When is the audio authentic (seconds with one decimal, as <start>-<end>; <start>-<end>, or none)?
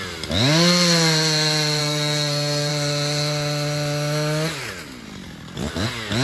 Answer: 0.0-1.8; 2.7-6.2